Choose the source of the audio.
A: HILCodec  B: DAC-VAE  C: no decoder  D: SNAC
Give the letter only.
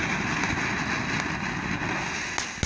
C